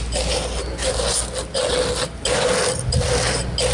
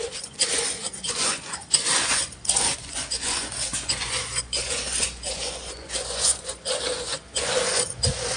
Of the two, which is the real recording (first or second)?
first